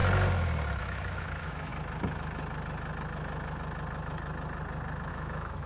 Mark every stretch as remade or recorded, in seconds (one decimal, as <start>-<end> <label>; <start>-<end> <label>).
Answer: 0.0-0.8 recorded; 0.8-1.7 remade; 1.7-5.1 recorded; 5.1-5.7 remade